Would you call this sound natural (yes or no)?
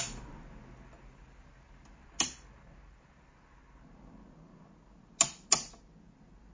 yes